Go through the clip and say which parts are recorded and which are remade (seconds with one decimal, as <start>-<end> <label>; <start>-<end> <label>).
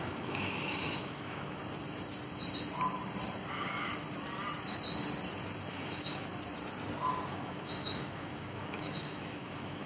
0.0-1.6 remade; 1.6-3.5 recorded; 3.5-3.9 remade; 3.9-5.7 recorded; 5.7-6.3 remade; 6.3-7.3 recorded; 7.3-9.9 remade